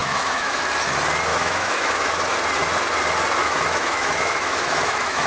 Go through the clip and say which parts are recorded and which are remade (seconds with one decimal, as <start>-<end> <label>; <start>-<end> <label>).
0.0-0.6 remade; 0.6-1.3 recorded; 1.3-2.2 remade; 2.2-3.4 recorded; 3.4-5.3 remade